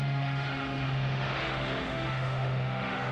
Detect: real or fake fake